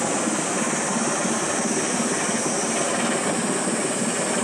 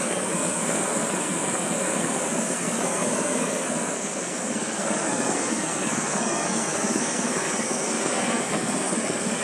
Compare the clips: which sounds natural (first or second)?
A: first